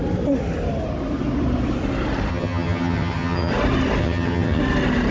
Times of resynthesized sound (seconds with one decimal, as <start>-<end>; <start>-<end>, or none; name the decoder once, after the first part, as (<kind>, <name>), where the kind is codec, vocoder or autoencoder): 2.3-3.5 (vocoder, HiFi-GAN); 4.0-4.6